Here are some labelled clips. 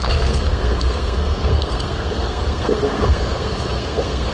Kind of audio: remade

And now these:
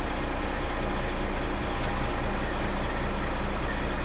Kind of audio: recorded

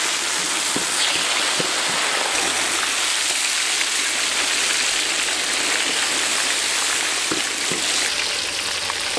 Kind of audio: recorded